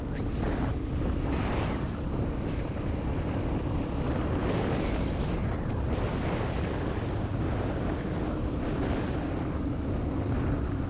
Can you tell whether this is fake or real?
real